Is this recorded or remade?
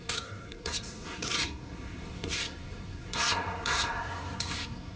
remade